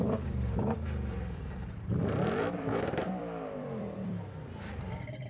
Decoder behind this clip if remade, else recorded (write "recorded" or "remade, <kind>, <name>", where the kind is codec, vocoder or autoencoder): remade, vocoder, BigVGAN v2